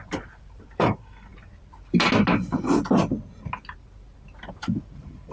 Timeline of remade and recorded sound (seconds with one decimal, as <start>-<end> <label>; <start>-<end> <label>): 0.0-1.3 remade; 1.3-4.5 recorded; 4.5-5.3 remade